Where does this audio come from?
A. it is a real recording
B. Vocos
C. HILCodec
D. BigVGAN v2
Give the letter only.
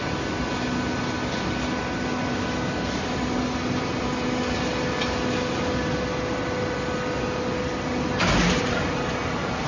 A